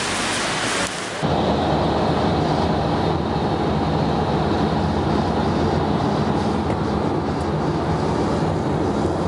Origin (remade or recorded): recorded